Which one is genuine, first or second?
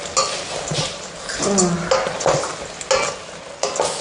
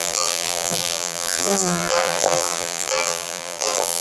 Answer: first